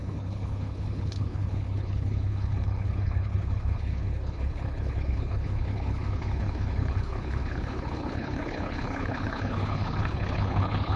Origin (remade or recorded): remade